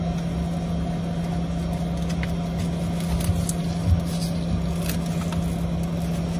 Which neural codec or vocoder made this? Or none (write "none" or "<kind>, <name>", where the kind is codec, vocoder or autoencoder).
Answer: none